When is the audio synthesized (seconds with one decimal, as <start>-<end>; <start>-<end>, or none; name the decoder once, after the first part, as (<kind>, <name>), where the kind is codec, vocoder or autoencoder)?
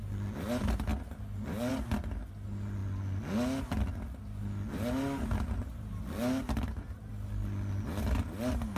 none